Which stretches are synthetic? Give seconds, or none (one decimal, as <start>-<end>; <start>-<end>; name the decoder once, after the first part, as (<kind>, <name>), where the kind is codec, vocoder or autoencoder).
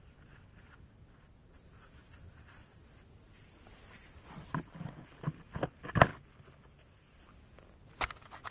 none